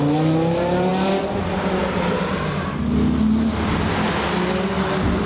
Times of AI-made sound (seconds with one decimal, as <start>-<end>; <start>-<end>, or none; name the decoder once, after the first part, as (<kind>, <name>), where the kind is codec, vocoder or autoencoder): none